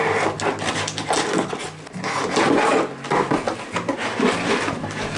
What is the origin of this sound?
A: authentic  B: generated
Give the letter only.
A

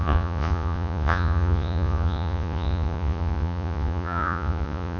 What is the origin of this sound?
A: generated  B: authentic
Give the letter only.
A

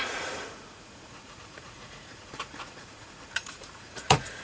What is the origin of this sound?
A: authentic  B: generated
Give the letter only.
B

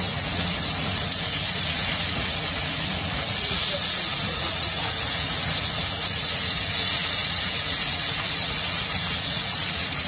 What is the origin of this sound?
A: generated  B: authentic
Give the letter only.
A